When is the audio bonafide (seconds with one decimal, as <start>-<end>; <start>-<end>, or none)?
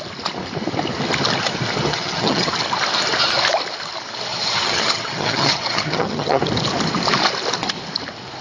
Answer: 0.0-1.9; 2.5-4.3; 6.4-8.4